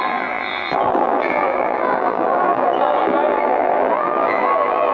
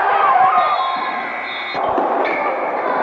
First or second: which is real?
second